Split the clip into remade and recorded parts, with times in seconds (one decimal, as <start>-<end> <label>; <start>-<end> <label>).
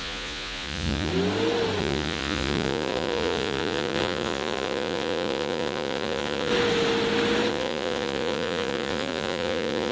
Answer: 0.0-1.1 remade; 1.1-1.8 recorded; 1.8-6.5 remade; 6.5-7.5 recorded; 7.5-9.9 remade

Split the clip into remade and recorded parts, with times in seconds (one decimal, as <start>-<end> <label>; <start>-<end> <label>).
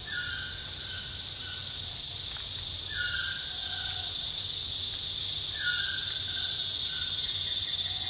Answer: 0.0-8.1 recorded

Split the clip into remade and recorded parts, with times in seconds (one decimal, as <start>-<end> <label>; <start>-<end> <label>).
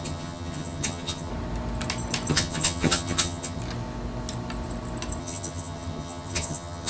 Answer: 0.0-1.3 remade; 1.3-2.3 recorded; 2.3-3.6 remade; 3.6-5.2 recorded; 5.2-6.9 remade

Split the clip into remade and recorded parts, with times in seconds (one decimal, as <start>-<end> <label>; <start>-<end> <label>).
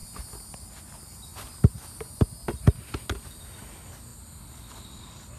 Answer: 0.0-5.4 recorded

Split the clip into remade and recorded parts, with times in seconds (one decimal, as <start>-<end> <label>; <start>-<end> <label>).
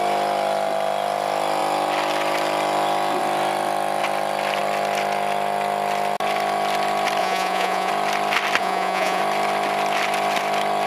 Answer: 0.0-7.2 recorded; 7.2-7.9 remade; 7.9-8.6 recorded; 8.6-9.2 remade; 9.2-10.9 recorded